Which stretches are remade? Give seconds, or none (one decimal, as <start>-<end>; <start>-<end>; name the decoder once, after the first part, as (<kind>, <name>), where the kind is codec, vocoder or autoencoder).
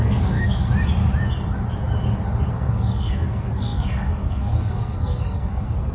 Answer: 0.0-0.7 (codec, SNAC); 2.5-5.9